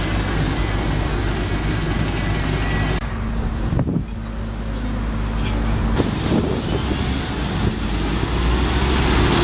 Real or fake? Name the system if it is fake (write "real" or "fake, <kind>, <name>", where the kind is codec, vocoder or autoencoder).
real